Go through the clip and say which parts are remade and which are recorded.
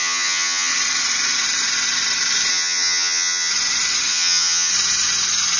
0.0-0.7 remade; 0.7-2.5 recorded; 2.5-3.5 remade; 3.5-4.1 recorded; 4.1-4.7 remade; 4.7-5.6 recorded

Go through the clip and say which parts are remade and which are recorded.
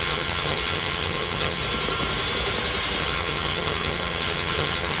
0.0-1.6 remade; 1.6-3.0 recorded; 3.0-5.0 remade